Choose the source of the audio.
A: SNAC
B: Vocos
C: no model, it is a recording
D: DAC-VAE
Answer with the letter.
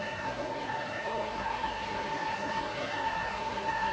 A